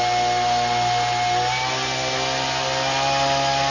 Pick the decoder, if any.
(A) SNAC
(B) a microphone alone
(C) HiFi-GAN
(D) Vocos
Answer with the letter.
B